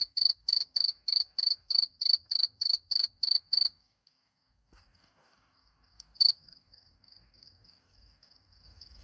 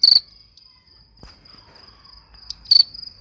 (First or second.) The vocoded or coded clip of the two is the first